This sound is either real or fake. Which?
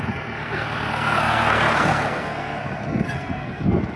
fake